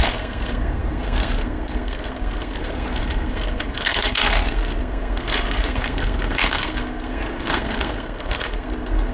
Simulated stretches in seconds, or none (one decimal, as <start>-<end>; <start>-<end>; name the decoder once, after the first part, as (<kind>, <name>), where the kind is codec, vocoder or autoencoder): 0.0-9.1 (codec, SNAC)